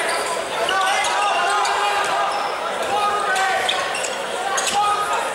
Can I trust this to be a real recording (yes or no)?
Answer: yes